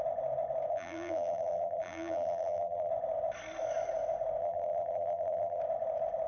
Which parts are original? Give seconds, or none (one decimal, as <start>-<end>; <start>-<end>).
0.0-0.7; 2.9-4.4; 5.6-6.3